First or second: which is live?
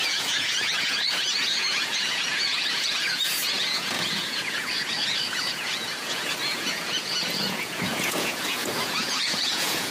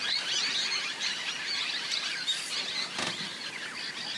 second